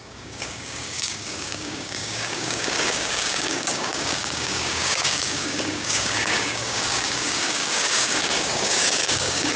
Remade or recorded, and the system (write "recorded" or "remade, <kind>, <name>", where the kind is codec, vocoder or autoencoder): remade, codec, DAC